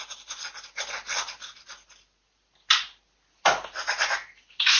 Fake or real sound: real